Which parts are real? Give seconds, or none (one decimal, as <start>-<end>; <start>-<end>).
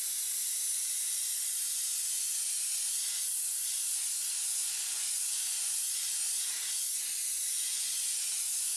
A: 0.0-1.5; 2.3-4.6; 5.9-7.4; 8.4-8.8